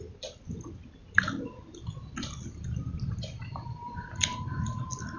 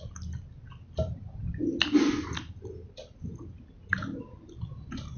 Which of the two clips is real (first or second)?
second